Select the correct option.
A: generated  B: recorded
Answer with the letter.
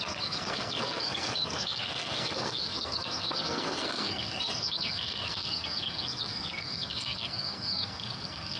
A